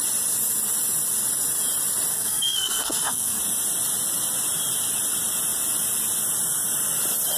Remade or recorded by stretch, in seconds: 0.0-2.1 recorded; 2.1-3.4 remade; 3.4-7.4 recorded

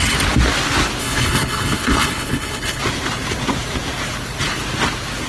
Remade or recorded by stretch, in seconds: 0.0-1.0 recorded; 1.0-2.8 remade; 2.8-5.3 recorded

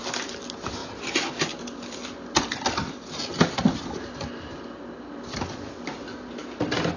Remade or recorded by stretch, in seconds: 0.0-7.0 recorded